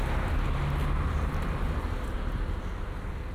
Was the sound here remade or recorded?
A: recorded